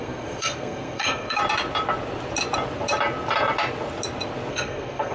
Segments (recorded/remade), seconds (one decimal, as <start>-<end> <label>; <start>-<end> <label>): 0.0-1.4 remade; 1.4-4.5 recorded; 4.5-5.1 remade